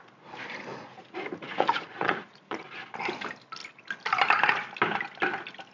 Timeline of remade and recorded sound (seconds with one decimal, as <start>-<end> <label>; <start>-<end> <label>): 0.0-0.7 recorded; 0.7-2.6 remade; 2.6-5.7 recorded